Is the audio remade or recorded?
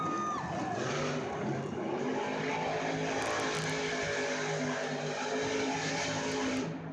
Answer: recorded